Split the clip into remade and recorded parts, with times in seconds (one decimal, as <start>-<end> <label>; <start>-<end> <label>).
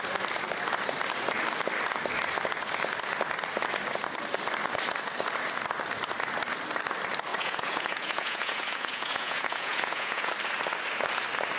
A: 0.0-7.3 recorded; 7.3-10.3 remade; 10.3-11.6 recorded